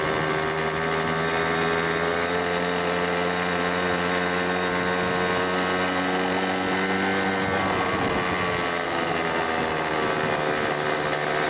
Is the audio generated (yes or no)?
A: no